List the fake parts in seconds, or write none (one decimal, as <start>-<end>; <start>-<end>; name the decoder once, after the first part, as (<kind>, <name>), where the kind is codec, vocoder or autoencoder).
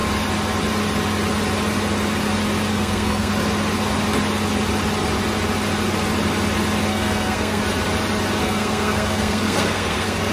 2.7-3.3 (codec, SNAC); 6.9-7.6; 8.4-10.3